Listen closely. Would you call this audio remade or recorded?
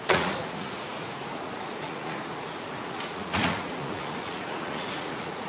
remade